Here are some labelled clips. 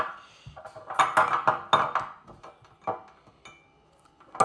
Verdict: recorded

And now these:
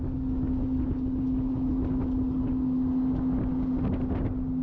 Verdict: recorded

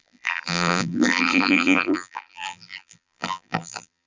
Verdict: remade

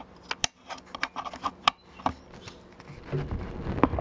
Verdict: recorded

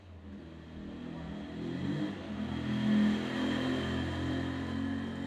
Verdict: recorded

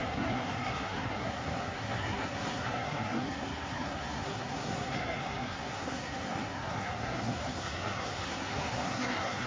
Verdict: remade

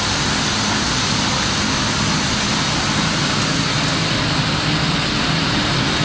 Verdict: recorded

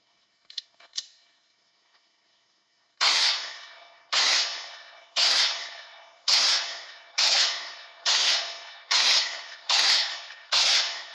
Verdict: remade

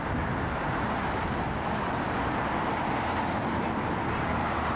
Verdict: recorded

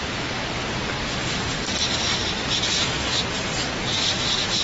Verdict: recorded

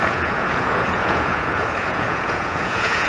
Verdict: remade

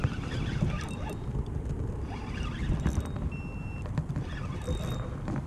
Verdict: recorded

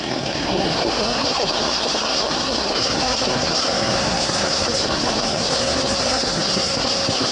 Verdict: remade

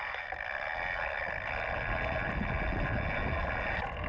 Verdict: recorded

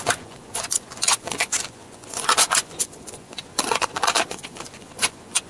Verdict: remade